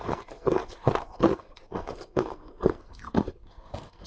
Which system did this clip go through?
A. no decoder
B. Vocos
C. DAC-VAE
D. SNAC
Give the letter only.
D